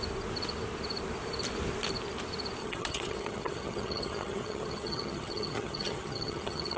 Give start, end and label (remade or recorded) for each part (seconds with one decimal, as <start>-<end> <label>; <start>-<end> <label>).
0.0-2.6 recorded; 2.6-6.8 remade